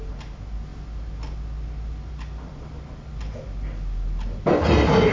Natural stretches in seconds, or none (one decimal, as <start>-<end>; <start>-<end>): 0.0-5.1